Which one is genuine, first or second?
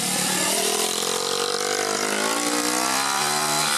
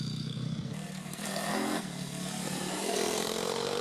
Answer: first